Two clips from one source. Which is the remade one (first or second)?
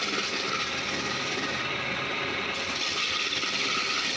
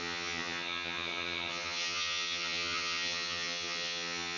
second